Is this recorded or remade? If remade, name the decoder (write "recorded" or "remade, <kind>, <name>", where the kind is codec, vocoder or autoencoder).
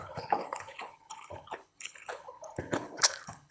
remade, codec, HILCodec